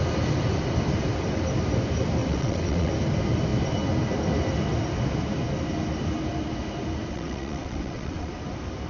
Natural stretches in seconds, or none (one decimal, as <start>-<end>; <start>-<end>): 0.0-2.2; 2.9-7.1; 8.3-8.9